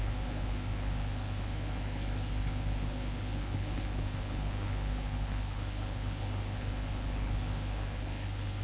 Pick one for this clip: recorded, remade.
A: remade